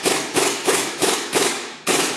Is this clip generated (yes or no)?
yes